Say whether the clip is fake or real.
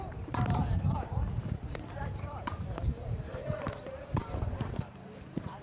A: fake